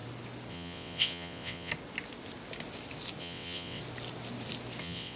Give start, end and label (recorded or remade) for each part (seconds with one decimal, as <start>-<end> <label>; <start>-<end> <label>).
0.0-0.5 recorded; 0.5-1.7 remade; 1.7-3.2 recorded; 3.2-3.8 remade; 3.8-4.8 recorded; 4.8-5.2 remade